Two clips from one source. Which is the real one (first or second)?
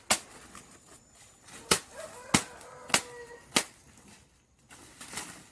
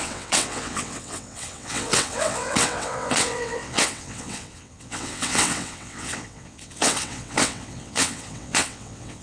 first